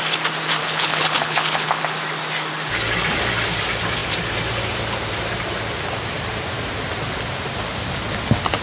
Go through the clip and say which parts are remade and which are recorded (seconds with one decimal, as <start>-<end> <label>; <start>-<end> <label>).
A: 0.0-0.6 recorded; 0.6-1.8 remade; 1.8-8.6 recorded